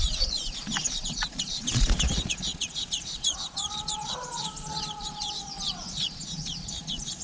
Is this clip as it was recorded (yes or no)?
no